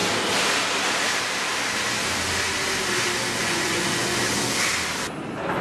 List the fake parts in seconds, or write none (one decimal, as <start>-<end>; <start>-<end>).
3.4-4.2